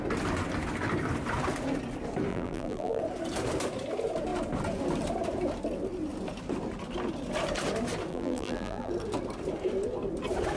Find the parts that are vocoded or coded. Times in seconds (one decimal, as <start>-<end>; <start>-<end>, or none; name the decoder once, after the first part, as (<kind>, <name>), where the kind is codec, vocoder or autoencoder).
2.3-3.0 (vocoder, BigVGAN v2); 8.1-8.9